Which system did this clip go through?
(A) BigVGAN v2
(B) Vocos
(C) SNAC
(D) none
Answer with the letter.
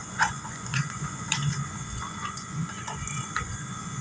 B